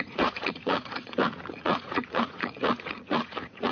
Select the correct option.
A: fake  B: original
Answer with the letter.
A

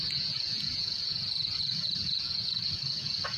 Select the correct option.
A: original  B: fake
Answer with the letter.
B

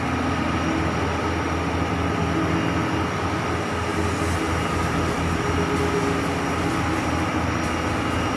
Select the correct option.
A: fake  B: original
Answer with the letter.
B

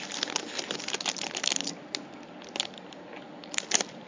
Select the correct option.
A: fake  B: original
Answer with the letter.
B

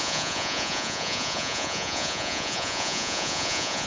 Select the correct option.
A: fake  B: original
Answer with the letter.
A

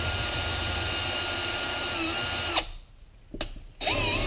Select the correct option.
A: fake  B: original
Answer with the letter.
B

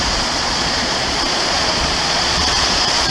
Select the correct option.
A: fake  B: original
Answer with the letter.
A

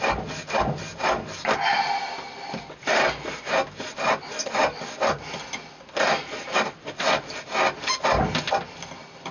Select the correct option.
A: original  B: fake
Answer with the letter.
A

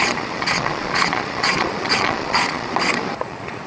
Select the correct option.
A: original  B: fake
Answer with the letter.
B